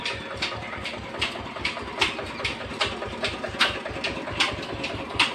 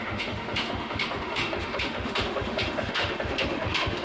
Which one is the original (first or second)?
first